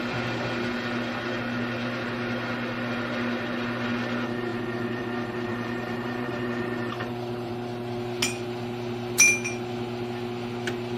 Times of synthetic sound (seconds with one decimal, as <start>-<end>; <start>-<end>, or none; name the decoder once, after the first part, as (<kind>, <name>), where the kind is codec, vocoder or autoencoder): 5.5-7.5 (vocoder, BigVGAN v2)